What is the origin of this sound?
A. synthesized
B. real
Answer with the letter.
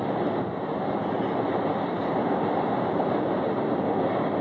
B